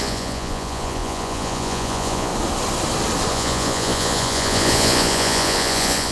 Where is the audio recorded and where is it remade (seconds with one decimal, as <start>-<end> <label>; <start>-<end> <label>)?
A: 0.0-2.3 remade; 2.3-3.3 recorded; 3.3-6.1 remade